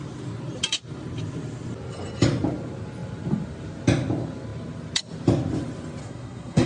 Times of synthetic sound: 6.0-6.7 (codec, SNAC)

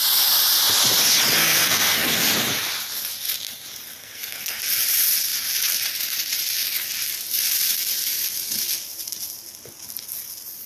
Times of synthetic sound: 1.4-2.3 (codec, SNAC); 4.0-4.6

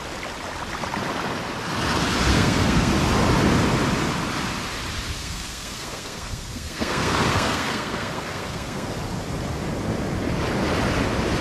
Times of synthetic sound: 2.3-2.9 (codec, SNAC); 5.2-8.9

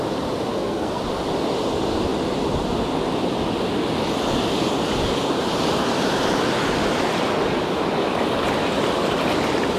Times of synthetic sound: 0.5-1.0 (codec, SNAC)

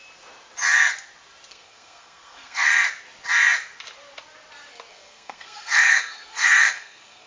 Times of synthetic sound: 1.5-2.7 (codec, SNAC); 4.9-7.3

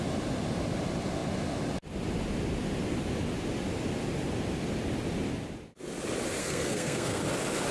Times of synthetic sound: 6.4-7.2 (codec, SNAC)

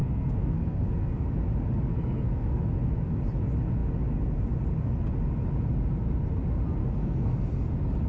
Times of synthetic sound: 0.0-1.3 (codec, SNAC); 1.9-2.6; 6.8-7.3